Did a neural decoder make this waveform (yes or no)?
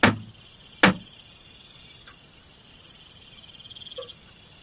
no